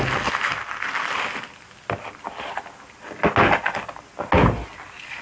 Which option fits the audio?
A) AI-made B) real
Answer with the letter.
B